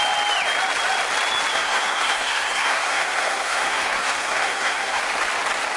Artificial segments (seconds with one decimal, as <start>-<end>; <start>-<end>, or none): 1.5-5.0